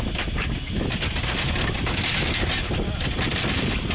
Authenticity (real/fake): real